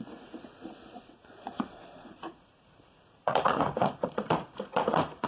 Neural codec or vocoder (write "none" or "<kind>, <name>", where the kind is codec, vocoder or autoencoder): vocoder, Vocos